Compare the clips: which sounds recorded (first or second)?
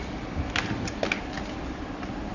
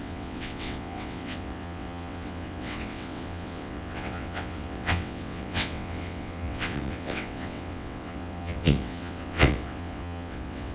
first